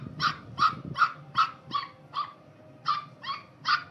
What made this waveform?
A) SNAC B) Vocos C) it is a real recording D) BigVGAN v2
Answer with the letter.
C